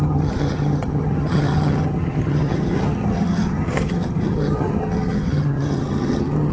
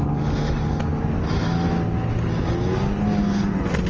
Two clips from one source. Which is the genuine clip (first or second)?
second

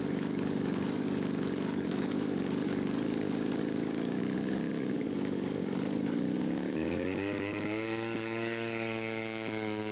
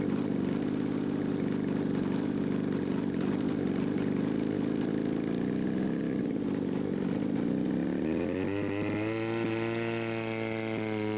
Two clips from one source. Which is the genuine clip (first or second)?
second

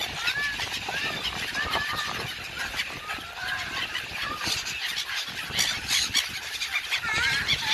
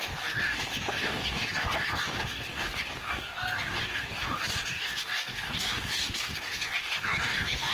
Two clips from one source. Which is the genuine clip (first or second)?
first